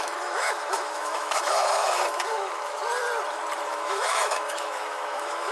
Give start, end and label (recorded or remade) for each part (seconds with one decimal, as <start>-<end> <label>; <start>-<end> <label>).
0.0-2.8 remade; 2.8-3.6 recorded; 3.6-5.5 remade